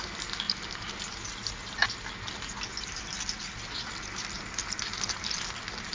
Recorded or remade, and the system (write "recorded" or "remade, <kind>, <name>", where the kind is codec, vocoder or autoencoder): recorded